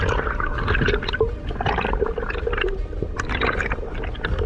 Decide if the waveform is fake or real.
real